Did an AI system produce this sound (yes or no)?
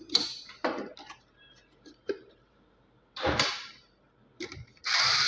yes